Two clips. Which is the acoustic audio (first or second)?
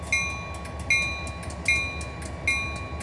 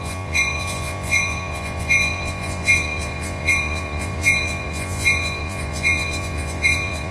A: first